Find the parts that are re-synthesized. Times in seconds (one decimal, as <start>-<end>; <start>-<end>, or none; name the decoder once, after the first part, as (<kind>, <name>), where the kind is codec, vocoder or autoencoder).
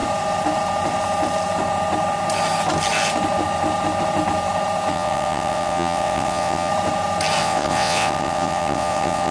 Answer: 4.9-6.7 (vocoder, WaveNeXt); 7.4-9.3